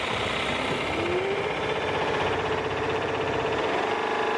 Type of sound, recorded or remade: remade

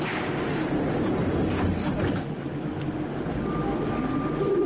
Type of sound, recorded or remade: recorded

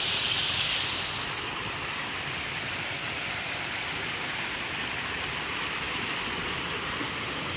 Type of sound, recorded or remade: recorded